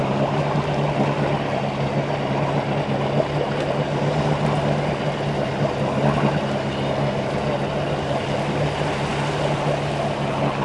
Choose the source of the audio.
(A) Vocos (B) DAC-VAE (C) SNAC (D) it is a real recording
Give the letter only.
D